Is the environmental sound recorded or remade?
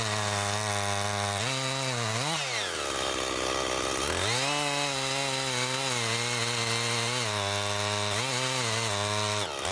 recorded